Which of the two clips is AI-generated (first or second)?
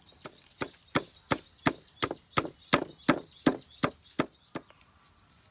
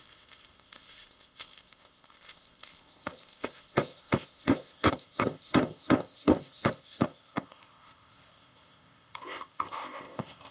second